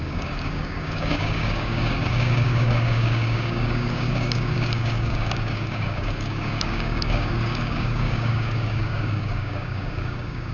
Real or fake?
fake